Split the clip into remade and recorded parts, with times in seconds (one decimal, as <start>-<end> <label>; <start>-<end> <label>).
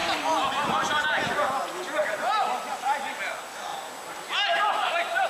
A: 0.0-5.3 recorded